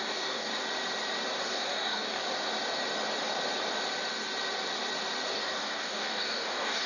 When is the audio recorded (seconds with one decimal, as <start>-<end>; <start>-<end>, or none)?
0.5-1.4; 2.2-5.3